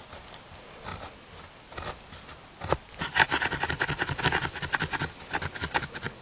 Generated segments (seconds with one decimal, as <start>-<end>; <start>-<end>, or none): none